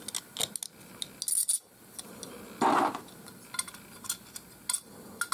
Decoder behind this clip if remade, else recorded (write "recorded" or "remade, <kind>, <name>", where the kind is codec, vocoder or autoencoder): recorded